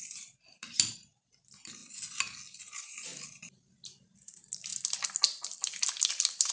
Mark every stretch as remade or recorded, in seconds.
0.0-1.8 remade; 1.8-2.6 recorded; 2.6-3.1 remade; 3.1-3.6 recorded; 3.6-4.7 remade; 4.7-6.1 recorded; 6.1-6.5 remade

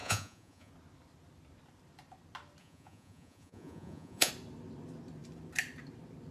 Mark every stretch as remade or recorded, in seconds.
0.0-0.7 remade; 0.7-2.6 recorded; 2.6-4.3 remade; 4.3-6.3 recorded

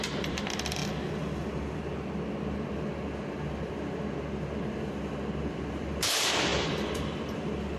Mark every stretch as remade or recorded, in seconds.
0.0-0.8 remade; 0.8-5.5 recorded; 5.5-7.8 remade

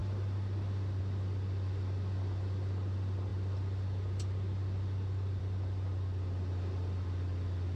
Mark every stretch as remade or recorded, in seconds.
0.0-7.8 recorded

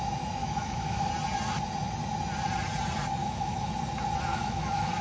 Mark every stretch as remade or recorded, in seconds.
0.0-0.4 recorded; 0.4-1.1 remade; 1.1-3.2 recorded; 3.2-3.7 remade; 3.7-4.3 recorded; 4.3-5.0 remade

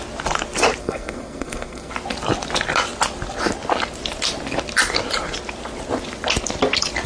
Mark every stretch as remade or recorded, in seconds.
0.0-0.8 recorded; 0.8-1.9 remade; 1.9-7.1 recorded